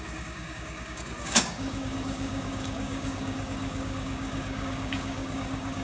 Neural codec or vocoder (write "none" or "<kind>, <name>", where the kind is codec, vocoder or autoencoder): codec, DAC